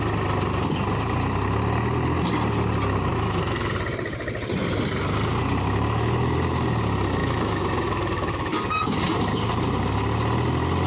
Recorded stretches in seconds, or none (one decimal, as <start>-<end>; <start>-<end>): 0.0-3.1; 3.7-7.2; 9.0-10.9